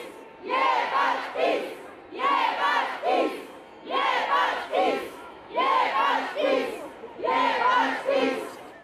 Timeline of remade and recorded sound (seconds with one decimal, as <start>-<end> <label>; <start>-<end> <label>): 0.0-4.7 recorded; 4.7-5.9 remade; 5.9-8.8 recorded